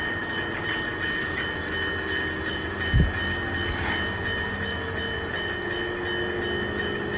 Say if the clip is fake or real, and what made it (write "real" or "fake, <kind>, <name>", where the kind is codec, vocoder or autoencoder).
real